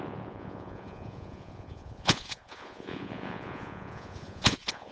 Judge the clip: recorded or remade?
remade